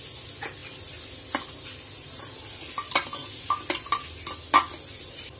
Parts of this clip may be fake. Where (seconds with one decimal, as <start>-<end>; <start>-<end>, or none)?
none